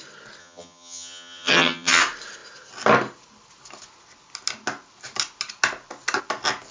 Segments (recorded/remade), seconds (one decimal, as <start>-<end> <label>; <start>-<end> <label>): 0.0-0.4 recorded; 0.4-2.0 remade; 2.0-6.7 recorded